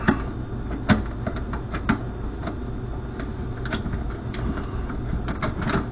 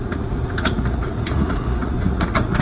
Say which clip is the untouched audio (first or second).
first